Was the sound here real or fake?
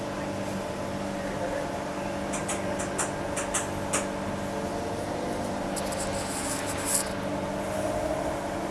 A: real